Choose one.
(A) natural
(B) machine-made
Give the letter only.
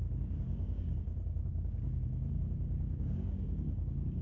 B